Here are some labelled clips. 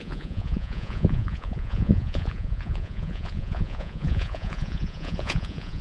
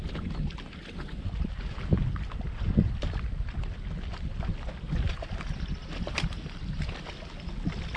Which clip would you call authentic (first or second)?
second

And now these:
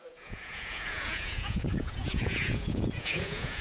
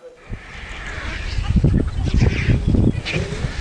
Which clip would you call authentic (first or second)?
second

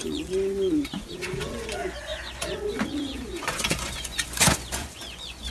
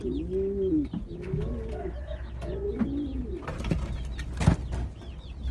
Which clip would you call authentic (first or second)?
second